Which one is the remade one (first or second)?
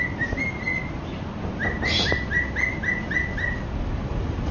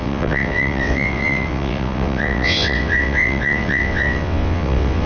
second